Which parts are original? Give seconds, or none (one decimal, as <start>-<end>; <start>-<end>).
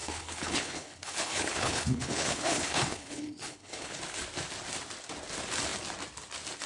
4.0-6.7